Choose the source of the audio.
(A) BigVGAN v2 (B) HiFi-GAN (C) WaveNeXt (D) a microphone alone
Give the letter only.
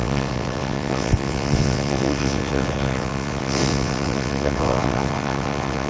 C